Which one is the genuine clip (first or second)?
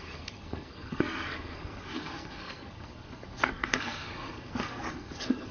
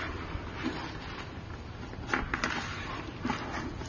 second